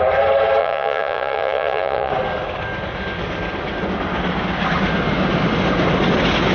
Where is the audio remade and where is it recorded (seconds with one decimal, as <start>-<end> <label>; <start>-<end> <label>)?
0.0-0.6 recorded; 0.6-2.1 remade; 2.1-6.5 recorded